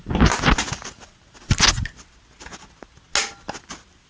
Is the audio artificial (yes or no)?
no